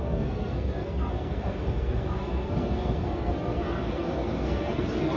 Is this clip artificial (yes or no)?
yes